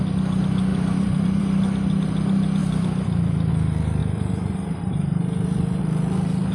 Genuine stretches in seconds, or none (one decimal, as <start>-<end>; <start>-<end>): 0.0-0.7; 1.4-2.6; 3.5-4.0; 5.8-6.5